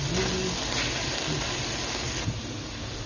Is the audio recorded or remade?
recorded